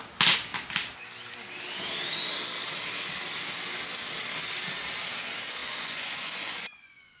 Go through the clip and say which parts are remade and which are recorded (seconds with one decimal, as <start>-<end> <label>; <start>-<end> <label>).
0.0-5.6 recorded; 5.6-7.2 remade